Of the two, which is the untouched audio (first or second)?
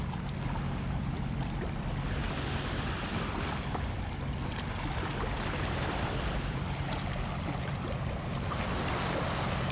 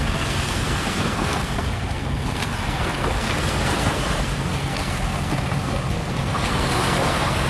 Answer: first